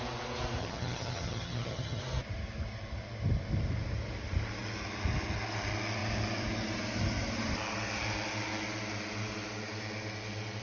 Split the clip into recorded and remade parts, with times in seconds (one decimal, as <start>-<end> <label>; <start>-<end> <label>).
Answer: 0.0-0.6 recorded; 0.6-2.0 remade; 2.0-10.6 recorded

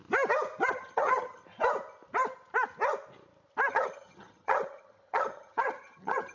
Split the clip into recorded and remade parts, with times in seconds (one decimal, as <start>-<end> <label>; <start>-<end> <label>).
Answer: 0.0-0.7 recorded; 0.7-1.4 remade; 1.4-3.7 recorded; 3.7-6.3 remade